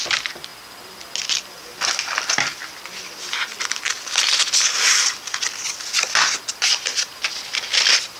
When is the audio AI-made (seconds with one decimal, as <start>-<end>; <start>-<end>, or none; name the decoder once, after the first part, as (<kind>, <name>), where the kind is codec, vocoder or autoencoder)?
none